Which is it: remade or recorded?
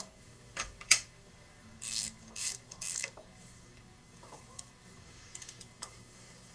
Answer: remade